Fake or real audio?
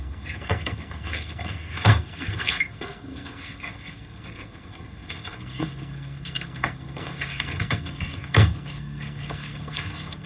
fake